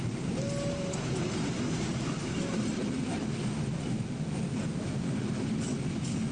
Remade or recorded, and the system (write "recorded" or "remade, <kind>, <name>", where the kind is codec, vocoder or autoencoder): recorded